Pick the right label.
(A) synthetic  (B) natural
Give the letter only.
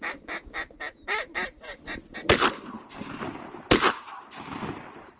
B